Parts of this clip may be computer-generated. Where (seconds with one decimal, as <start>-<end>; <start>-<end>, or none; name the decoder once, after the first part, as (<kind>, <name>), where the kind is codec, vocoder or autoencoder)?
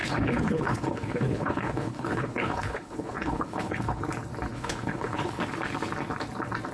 0.0-4.0 (codec, HILCodec); 4.5-5.4